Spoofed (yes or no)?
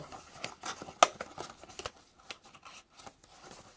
no